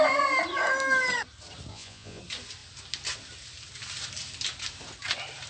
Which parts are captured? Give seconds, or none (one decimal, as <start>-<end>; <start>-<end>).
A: 0.0-1.7; 2.2-5.5